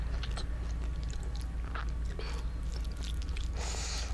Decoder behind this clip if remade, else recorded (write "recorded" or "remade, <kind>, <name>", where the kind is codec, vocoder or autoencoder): recorded